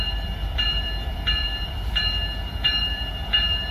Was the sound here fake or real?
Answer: fake